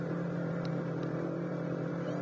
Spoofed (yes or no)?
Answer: yes